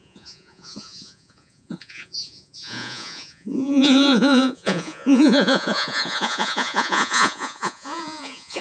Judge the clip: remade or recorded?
remade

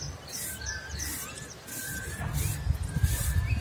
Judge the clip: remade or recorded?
recorded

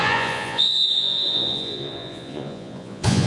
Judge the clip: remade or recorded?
remade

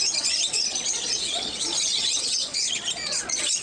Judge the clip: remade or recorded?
remade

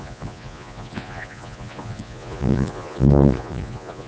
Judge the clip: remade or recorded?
remade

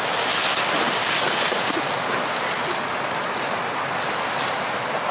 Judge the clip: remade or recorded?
recorded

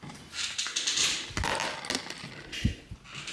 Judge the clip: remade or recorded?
recorded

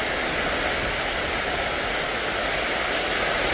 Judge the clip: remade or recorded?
recorded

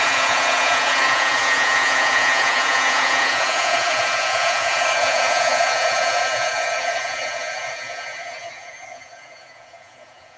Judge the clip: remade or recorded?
remade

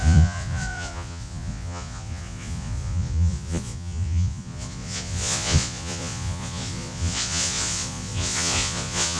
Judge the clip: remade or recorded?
remade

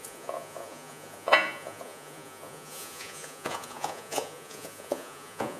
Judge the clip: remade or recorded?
remade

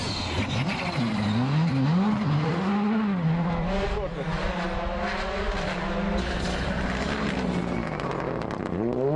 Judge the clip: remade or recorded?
recorded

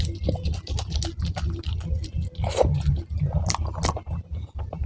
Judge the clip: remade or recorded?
recorded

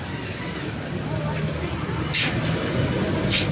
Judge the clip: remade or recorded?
recorded